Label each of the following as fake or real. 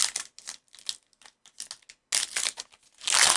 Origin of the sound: real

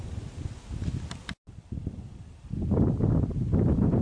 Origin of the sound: real